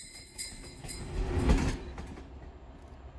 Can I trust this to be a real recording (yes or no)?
yes